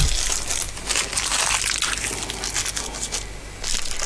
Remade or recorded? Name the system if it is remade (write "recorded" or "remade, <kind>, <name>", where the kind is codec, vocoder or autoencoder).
recorded